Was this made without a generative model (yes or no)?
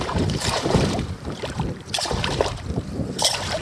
no